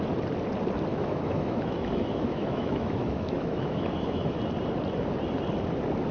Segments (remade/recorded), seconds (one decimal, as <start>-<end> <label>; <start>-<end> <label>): 0.0-0.9 recorded; 0.9-4.4 remade; 4.4-6.1 recorded